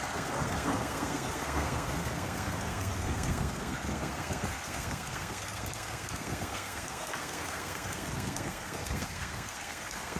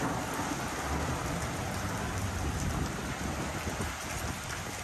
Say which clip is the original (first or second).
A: second